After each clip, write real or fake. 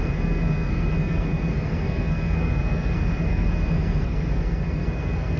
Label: fake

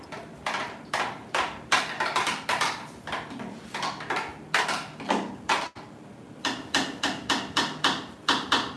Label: real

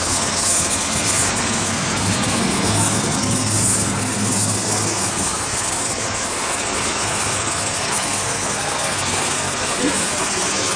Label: fake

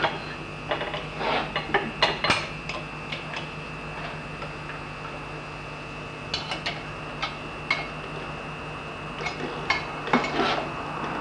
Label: real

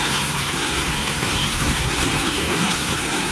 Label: fake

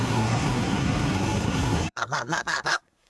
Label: fake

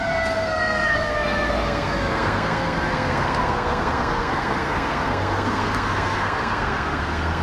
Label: fake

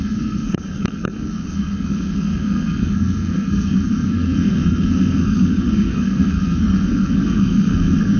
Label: fake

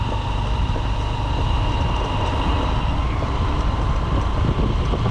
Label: real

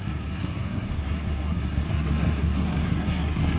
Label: fake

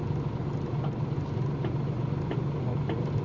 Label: real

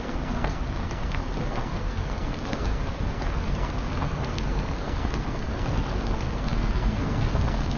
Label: fake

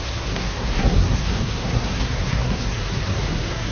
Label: fake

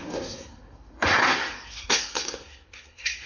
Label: fake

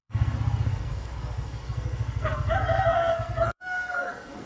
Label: fake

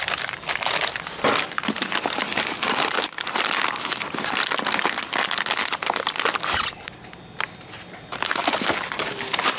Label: real